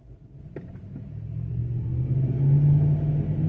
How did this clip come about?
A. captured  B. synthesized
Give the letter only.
A